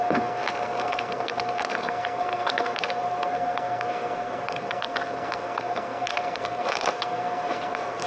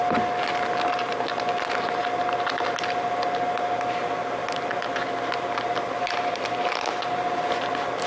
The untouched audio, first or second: second